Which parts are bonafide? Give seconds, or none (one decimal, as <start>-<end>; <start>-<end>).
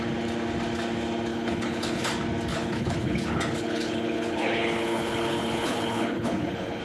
0.0-1.3; 2.1-2.5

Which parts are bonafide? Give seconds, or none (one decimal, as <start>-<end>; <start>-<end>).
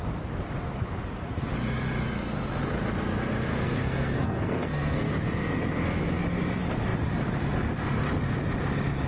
0.0-3.5; 5.1-9.1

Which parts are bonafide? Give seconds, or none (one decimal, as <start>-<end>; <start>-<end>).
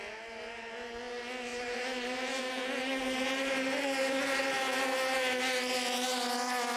0.0-1.5; 2.4-2.9; 4.4-6.8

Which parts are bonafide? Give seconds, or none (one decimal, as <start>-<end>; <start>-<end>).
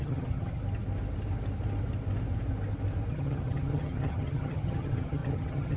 0.6-3.1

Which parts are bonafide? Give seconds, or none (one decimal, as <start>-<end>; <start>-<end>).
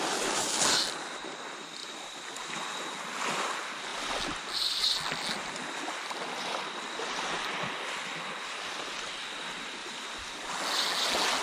0.0-9.8; 10.4-11.4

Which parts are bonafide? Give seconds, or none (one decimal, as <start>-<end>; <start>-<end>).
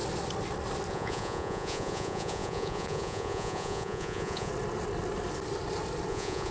0.0-0.9; 4.5-6.1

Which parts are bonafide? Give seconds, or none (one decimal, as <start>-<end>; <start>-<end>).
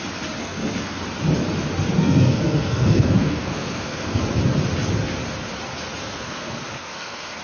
0.0-0.4; 1.0-2.0; 4.2-6.0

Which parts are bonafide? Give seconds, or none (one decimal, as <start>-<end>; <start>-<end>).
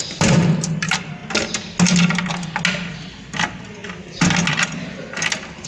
1.2-2.9; 3.8-4.5